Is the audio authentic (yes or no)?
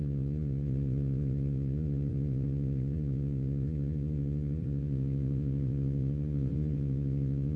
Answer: no